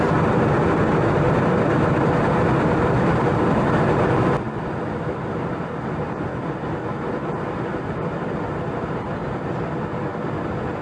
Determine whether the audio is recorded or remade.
recorded